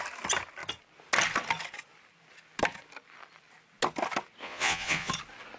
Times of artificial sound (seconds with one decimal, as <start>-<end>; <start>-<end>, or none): 4.4-5.1